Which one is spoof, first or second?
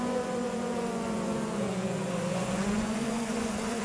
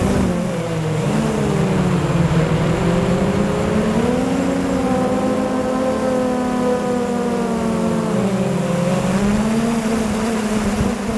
first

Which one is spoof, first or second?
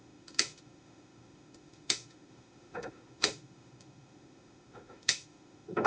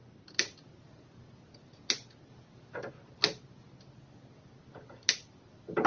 first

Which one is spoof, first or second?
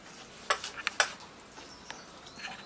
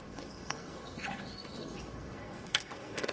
second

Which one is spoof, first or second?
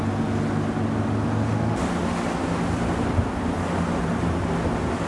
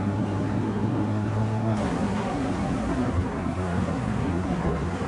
second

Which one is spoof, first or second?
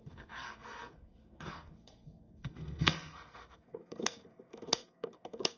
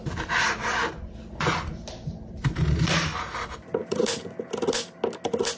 first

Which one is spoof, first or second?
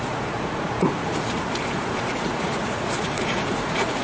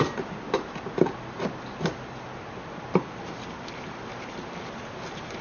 first